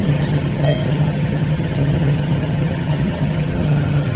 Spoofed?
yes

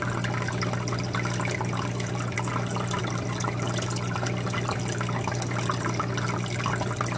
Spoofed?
no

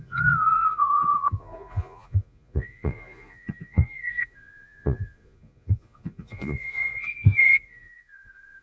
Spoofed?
yes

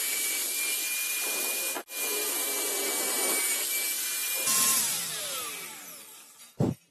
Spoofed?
no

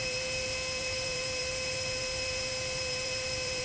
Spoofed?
yes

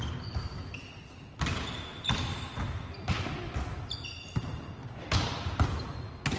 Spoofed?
no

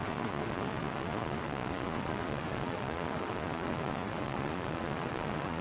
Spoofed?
yes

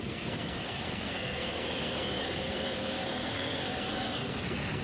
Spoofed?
yes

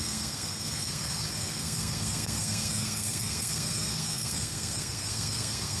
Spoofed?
yes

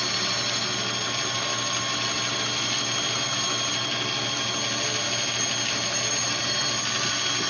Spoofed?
no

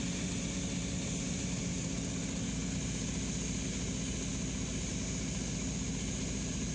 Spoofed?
no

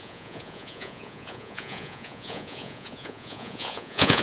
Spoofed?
yes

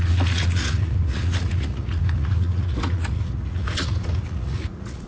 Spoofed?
yes